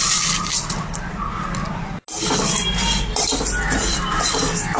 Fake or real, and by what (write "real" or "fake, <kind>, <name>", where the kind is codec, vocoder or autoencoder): real